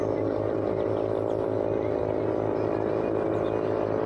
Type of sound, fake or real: real